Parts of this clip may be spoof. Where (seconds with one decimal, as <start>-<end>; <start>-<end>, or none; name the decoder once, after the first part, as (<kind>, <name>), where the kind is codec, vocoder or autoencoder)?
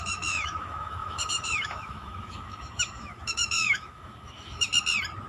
0.0-4.7 (autoencoder, DAC-VAE)